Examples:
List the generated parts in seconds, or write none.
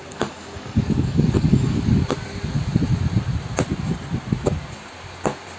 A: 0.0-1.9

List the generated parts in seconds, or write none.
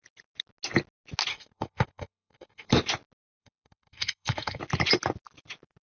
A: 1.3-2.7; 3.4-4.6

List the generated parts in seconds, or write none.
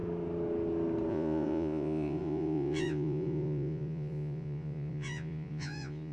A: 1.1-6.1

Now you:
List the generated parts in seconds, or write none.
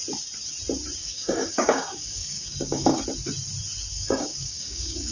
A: 1.0-3.0; 3.9-5.1